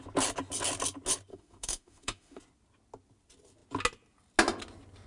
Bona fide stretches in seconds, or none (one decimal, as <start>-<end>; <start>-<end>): 0.0-1.3; 2.4-5.1